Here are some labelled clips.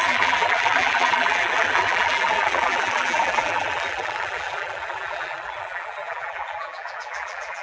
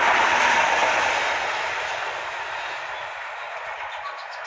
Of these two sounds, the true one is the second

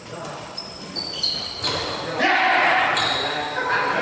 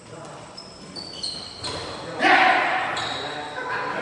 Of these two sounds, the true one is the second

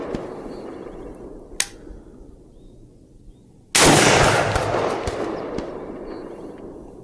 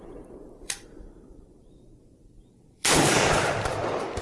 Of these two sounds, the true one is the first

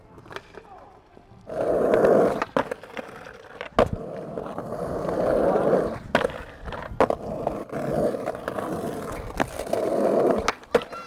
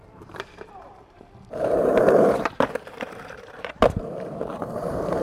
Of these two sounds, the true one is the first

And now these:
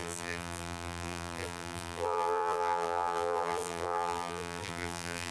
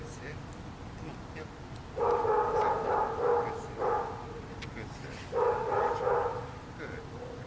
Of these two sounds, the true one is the second